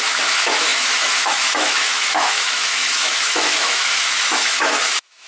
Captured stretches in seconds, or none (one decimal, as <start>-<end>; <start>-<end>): none